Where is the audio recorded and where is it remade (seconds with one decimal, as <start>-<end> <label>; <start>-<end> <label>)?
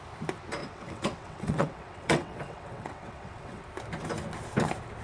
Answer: 0.0-0.6 recorded; 0.6-3.6 remade; 3.6-5.0 recorded